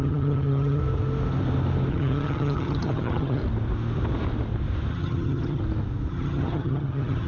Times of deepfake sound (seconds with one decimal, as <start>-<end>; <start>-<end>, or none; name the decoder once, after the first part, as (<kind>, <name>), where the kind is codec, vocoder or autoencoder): 0.0-0.8 (vocoder, HiFi-GAN); 1.9-3.4; 4.9-5.6; 6.1-7.3